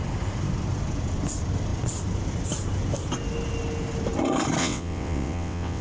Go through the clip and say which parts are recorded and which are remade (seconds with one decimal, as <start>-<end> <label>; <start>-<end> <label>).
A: 0.0-4.6 recorded; 4.6-5.8 remade